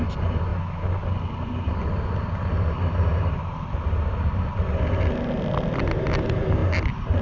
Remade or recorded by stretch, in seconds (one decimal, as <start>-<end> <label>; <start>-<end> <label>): 0.0-7.2 recorded